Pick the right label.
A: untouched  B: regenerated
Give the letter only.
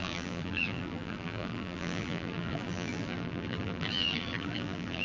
B